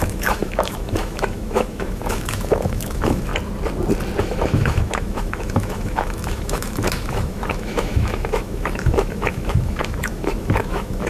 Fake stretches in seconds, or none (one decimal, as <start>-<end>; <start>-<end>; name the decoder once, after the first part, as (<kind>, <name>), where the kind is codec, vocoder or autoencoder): 0.0-3.3 (autoencoder, DAC-VAE); 4.2-11.1